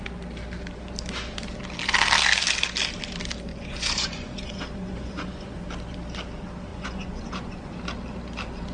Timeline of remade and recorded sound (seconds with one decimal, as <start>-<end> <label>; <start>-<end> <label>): 0.0-3.5 recorded; 3.5-5.6 remade; 5.6-6.7 recorded; 6.7-7.8 remade; 7.8-8.7 recorded